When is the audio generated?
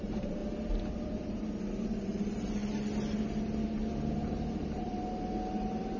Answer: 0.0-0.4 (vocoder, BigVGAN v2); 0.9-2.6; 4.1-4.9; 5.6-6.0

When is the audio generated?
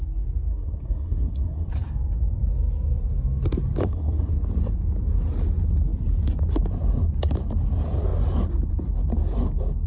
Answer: 0.5-1.7 (codec, SNAC); 3.8-4.3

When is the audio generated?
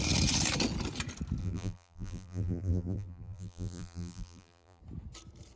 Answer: 1.4-4.8 (vocoder, BigVGAN v2)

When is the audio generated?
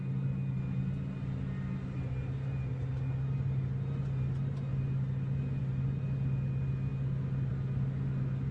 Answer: none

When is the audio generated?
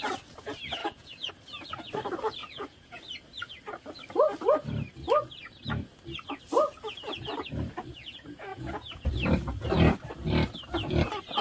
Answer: 0.8-1.3 (vocoder, Vocos); 2.4-3.0; 8.5-9.1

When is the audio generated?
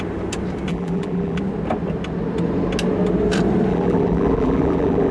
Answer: 0.7-1.4 (vocoder, BigVGAN v2); 3.7-5.1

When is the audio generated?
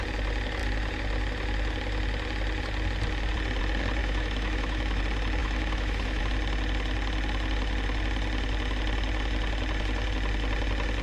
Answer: 4.0-5.0 (autoencoder, DAC-VAE); 5.4-6.2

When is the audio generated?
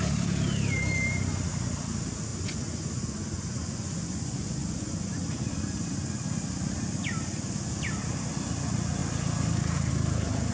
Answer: 2.3-6.4 (vocoder, Vocos)